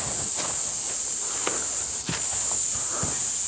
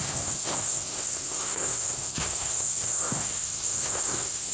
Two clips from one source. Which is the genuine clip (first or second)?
first